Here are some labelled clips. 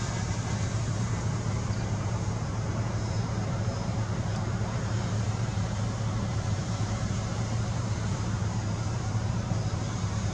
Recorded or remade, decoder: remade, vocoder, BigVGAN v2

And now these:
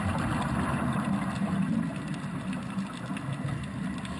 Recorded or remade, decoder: recorded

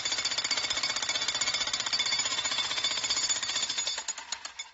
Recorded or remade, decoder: recorded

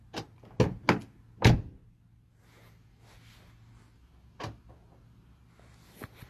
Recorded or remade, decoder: recorded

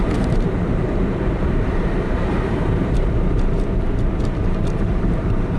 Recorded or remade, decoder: remade, vocoder, BigVGAN v2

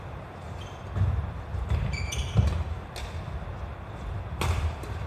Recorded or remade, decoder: recorded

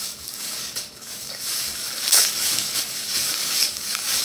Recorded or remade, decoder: remade, codec, DAC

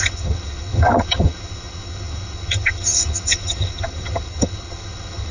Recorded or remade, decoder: remade, vocoder, HiFi-GAN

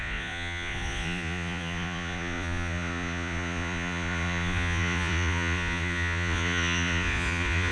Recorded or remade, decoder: remade, vocoder, Vocos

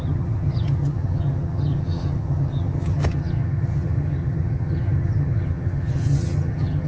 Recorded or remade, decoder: remade, vocoder, HiFi-GAN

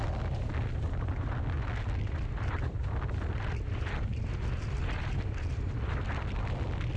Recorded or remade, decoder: recorded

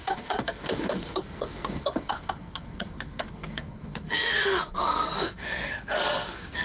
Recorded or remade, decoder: remade, codec, SNAC